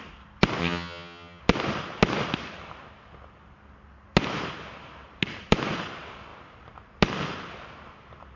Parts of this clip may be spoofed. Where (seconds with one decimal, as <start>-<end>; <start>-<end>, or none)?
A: 0.6-1.4